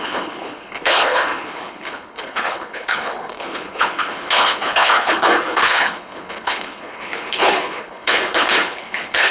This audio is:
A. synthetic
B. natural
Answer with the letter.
A